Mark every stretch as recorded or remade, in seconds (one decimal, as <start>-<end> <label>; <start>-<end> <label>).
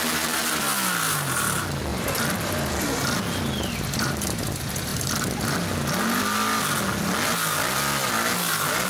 0.0-1.9 recorded; 1.9-3.2 remade; 3.2-8.9 recorded